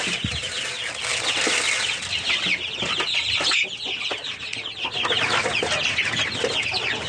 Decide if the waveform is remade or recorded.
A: recorded